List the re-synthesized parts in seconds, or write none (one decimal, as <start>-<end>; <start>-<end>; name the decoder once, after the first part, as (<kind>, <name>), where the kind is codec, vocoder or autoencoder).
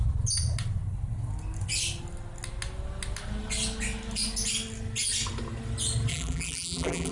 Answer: 6.1-7.1 (vocoder, BigVGAN v2)